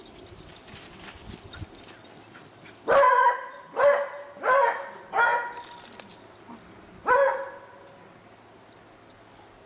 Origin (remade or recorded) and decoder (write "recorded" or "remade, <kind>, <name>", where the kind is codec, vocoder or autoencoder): recorded